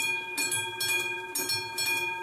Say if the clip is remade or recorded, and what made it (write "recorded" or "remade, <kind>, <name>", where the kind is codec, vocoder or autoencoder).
recorded